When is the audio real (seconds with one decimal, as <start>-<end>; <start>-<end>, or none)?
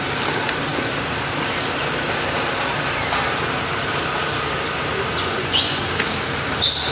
0.0-5.2; 5.8-6.9